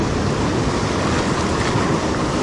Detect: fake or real real